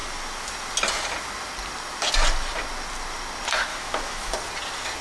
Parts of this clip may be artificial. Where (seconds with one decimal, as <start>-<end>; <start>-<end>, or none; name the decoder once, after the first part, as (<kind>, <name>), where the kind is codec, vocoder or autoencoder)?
3.7-4.3 (autoencoder, DAC-VAE)